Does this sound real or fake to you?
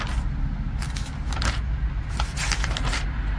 real